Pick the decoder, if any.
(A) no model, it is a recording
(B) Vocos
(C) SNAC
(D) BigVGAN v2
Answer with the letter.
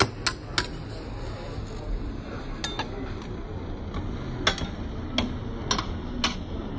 A